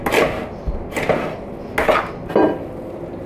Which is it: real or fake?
real